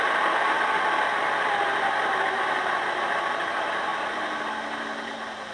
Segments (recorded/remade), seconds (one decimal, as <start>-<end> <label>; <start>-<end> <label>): 0.0-5.5 recorded